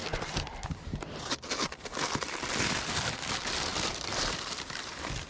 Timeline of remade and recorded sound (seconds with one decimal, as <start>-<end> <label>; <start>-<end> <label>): 0.0-5.3 recorded